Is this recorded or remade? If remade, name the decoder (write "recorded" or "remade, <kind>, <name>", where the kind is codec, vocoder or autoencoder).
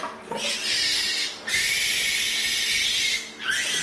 recorded